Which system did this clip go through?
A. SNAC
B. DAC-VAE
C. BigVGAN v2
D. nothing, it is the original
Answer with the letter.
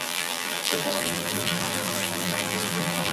C